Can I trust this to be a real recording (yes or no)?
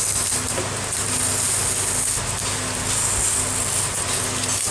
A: yes